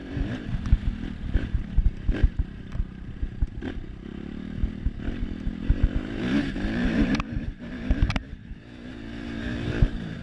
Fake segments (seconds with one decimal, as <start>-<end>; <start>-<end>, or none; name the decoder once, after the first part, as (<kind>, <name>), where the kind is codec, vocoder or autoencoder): 0.0-10.2 (vocoder, BigVGAN v2)